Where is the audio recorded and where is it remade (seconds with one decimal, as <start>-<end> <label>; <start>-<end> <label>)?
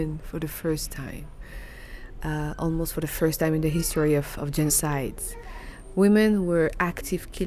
0.0-5.9 recorded; 5.9-7.5 remade